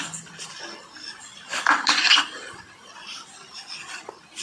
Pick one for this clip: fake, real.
real